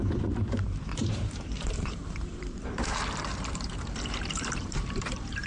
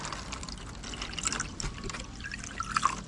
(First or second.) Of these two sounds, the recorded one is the second